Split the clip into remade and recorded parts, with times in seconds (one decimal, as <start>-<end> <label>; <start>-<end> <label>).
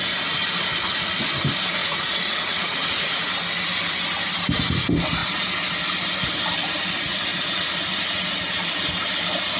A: 0.0-1.8 recorded; 1.8-3.3 remade; 3.3-7.3 recorded; 7.3-7.8 remade; 7.8-9.6 recorded